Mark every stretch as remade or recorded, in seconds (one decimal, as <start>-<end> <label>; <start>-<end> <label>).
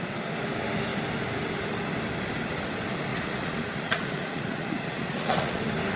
0.0-3.1 recorded; 3.1-5.6 remade; 5.6-6.0 recorded